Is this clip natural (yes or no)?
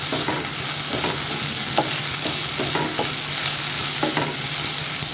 yes